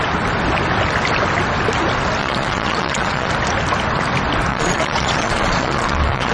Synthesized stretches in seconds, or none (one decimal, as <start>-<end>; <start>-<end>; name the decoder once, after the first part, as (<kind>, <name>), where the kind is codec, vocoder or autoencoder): 2.2-3.3 (vocoder, Vocos); 4.5-6.3